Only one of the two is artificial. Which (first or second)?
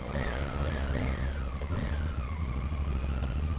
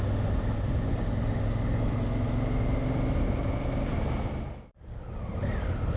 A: first